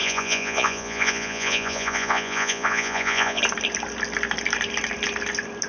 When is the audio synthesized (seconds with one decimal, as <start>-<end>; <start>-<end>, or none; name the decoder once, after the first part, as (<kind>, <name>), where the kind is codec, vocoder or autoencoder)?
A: 0.0-3.4 (vocoder, Vocos)